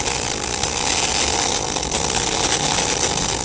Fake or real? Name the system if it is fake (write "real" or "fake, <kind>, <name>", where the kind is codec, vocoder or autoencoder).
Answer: real